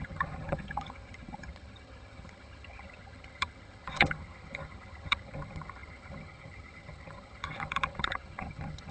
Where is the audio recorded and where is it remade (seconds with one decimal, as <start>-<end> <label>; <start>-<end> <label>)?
0.0-8.9 remade